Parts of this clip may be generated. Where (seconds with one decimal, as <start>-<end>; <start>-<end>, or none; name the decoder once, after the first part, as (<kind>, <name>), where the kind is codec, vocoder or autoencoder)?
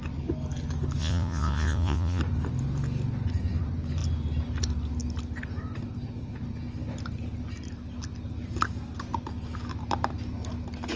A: 1.0-2.2 (vocoder, Vocos)